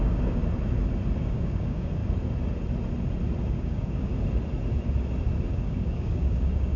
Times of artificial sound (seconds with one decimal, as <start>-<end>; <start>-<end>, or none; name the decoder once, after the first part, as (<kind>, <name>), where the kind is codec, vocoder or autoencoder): 0.0-0.4 (codec, DAC); 1.2-2.0; 3.5-4.1; 5.5-6.8